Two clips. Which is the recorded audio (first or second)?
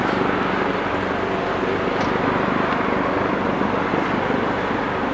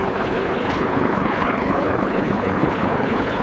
first